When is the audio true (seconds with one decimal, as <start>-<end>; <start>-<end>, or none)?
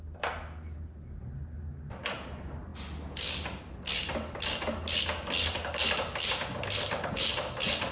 0.0-7.9